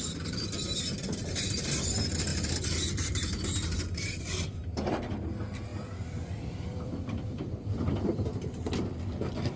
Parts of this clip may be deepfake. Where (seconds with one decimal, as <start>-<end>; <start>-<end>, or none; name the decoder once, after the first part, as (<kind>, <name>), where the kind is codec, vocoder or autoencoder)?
2.3-4.9 (vocoder, BigVGAN v2); 5.7-8.4